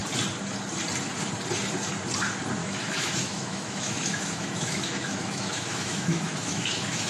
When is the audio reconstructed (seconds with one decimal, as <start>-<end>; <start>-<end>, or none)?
2.6-7.1

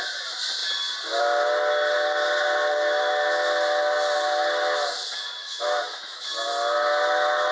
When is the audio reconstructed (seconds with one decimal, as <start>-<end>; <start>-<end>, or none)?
5.4-6.2

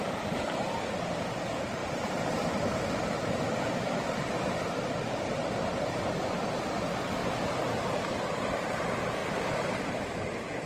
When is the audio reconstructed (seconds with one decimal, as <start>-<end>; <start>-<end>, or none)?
none

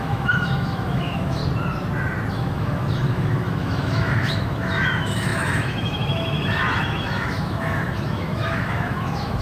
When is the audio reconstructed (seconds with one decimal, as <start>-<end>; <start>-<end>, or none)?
0.0-1.4; 2.3-9.4

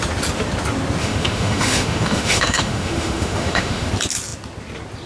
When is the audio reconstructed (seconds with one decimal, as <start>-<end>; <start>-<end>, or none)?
1.0-3.9